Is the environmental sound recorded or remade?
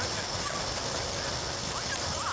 recorded